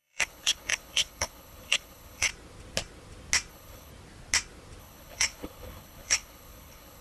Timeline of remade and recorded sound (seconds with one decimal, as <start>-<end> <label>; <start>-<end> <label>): 0.0-2.3 remade; 2.3-3.5 recorded; 3.5-3.9 remade; 3.9-4.8 recorded; 4.8-7.0 remade